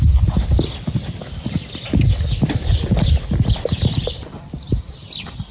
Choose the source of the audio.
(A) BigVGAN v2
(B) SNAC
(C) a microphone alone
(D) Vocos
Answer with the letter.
C